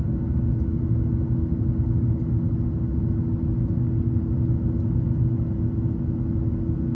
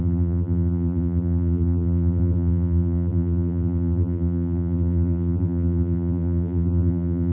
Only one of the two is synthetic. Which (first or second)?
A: second